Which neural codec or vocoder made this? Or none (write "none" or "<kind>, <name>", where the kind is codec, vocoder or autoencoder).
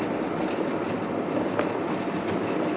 none